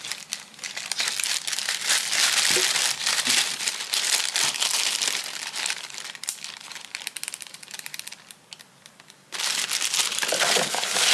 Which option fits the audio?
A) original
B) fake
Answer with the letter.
B